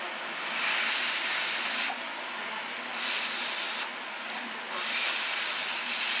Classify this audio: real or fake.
real